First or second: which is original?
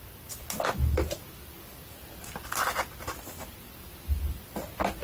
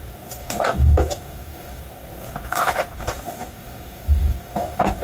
first